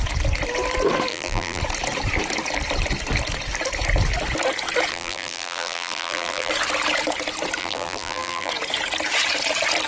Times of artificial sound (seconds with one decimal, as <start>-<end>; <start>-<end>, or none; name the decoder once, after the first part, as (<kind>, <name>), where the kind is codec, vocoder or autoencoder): 1.1-1.6 (vocoder, BigVGAN v2); 4.9-6.5; 7.6-8.5